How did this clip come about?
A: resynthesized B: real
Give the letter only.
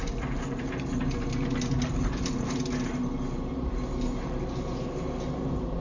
B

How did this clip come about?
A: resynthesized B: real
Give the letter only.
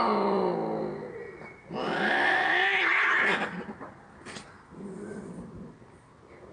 B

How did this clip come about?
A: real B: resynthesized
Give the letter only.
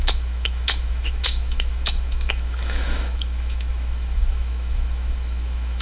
B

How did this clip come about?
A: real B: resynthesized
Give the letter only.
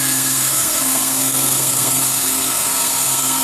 B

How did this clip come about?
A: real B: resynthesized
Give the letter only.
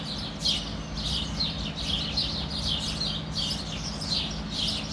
A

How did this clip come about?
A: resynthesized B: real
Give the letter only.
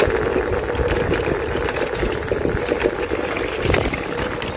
B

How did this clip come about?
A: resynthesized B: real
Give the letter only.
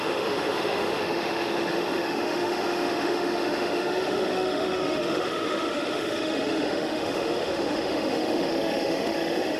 A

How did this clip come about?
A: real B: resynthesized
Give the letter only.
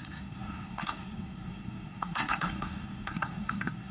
B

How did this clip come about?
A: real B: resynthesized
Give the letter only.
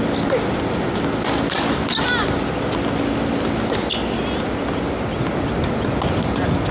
A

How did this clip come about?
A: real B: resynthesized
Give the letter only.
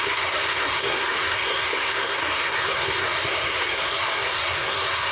B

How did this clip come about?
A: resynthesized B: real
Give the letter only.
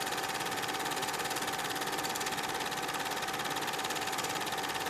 B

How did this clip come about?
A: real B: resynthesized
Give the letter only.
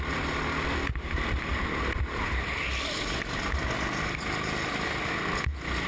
A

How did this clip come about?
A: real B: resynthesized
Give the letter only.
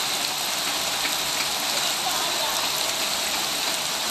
A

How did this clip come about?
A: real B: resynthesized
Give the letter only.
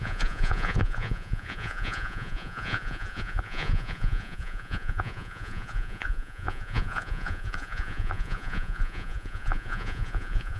B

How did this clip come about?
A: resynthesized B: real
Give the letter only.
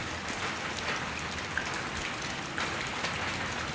B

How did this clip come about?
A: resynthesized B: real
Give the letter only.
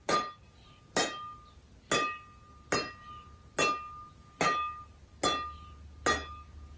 B